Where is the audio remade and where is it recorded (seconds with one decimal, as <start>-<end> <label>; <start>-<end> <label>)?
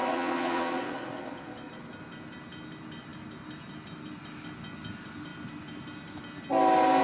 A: 0.0-1.7 remade; 1.7-7.0 recorded